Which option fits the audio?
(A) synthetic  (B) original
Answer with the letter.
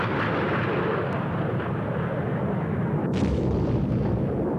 B